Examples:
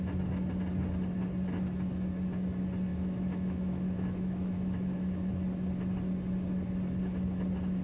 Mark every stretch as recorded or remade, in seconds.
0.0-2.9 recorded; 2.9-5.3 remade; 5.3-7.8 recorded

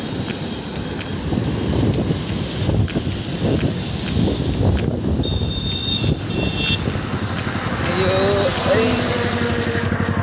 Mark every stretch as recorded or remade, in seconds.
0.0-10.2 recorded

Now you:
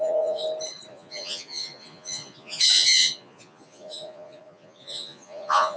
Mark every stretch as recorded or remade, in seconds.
0.0-0.4 remade; 0.4-0.9 recorded; 0.9-5.8 remade

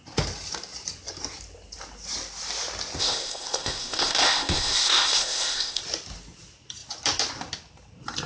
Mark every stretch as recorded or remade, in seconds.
0.0-3.0 recorded; 3.0-5.8 remade; 5.8-8.3 recorded

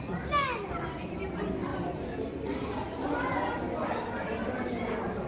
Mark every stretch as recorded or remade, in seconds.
0.0-5.3 recorded

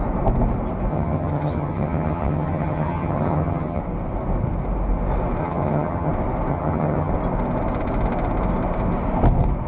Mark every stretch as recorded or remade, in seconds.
0.0-0.9 recorded; 0.9-3.8 remade; 3.8-5.4 recorded; 5.4-6.1 remade; 6.1-6.5 recorded; 6.5-7.1 remade; 7.1-9.7 recorded

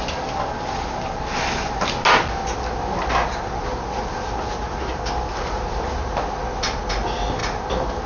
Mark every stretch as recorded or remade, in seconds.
0.0-8.1 recorded

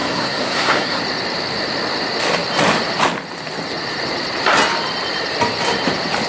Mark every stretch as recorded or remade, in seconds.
0.0-1.0 remade; 1.0-6.3 recorded